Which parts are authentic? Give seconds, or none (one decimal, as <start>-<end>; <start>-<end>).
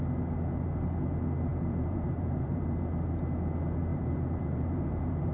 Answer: 0.0-1.5; 2.6-3.9